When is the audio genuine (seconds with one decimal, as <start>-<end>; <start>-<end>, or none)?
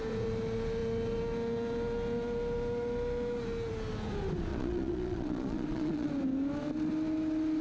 0.0-4.5; 6.1-7.6